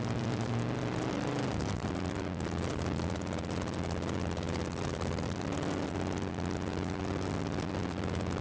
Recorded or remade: remade